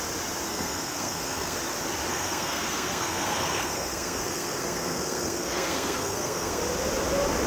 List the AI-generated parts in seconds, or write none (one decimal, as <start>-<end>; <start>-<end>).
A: 0.5-1.6; 2.1-6.6